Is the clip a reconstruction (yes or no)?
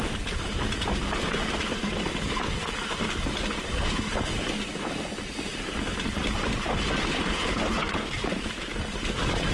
no